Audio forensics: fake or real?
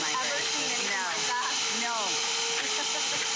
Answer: real